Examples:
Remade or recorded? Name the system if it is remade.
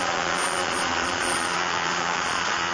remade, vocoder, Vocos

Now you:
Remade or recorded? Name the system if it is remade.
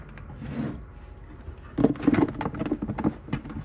recorded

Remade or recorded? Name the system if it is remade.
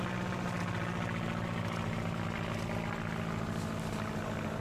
recorded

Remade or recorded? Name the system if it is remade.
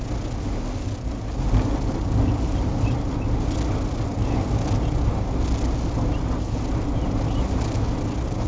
recorded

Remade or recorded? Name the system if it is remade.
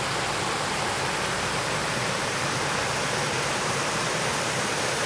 recorded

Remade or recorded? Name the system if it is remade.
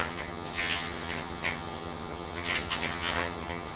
remade, vocoder, HiFi-GAN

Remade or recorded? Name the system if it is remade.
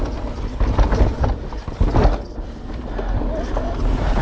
recorded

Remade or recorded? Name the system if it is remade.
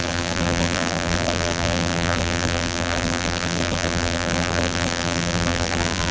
remade, vocoder, BigVGAN v2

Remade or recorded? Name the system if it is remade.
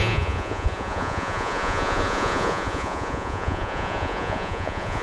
remade, vocoder, Vocos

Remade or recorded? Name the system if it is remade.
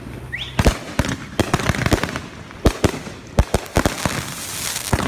recorded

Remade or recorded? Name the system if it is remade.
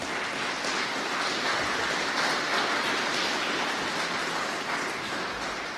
recorded